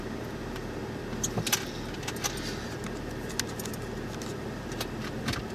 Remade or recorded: recorded